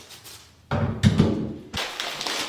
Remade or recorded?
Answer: recorded